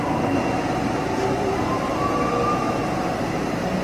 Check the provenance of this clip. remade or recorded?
remade